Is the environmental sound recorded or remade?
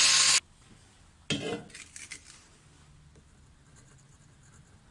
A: recorded